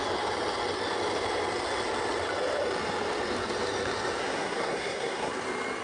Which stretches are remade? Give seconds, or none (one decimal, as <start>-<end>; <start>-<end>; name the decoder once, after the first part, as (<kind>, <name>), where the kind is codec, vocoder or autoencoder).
4.2-5.3 (codec, SNAC)